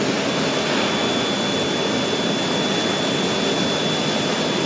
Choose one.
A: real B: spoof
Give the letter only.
A